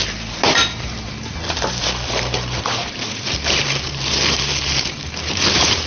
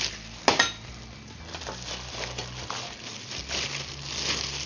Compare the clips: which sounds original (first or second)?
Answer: second